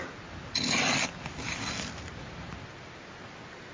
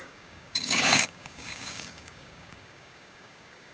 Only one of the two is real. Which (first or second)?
first